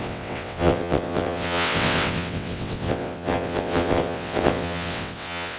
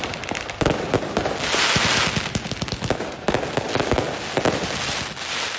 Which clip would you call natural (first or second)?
second